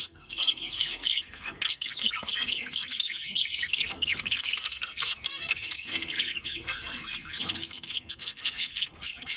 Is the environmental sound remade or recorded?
remade